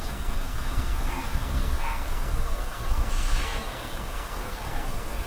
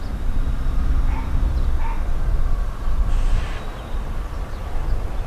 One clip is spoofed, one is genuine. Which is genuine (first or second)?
second